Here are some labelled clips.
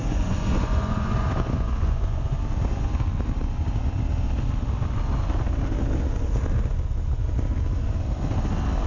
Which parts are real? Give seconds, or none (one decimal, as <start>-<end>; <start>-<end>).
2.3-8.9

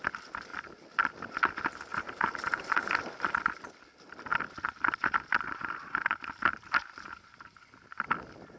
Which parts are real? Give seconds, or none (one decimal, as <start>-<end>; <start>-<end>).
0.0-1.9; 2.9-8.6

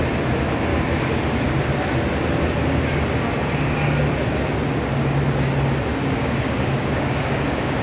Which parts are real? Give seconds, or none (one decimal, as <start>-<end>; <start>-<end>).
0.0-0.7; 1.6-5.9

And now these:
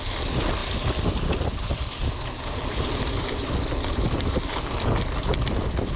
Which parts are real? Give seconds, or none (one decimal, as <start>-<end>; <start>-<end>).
0.0-6.0